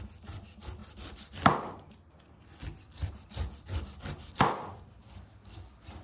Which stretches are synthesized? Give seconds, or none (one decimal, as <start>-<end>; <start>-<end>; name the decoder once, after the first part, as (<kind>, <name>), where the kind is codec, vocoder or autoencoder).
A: none